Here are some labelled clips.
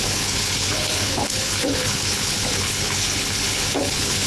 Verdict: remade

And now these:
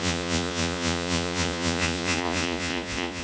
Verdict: remade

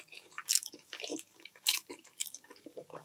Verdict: remade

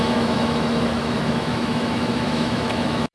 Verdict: remade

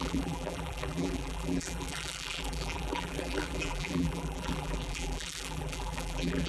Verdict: remade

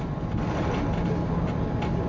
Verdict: recorded